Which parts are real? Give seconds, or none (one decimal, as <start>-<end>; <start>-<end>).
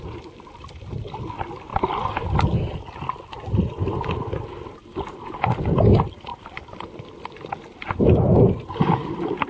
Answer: 0.0-1.7; 2.7-6.3; 7.5-9.5